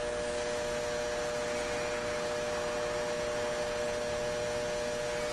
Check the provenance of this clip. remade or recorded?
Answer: recorded